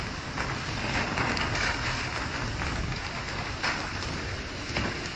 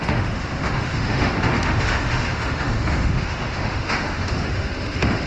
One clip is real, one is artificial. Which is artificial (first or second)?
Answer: second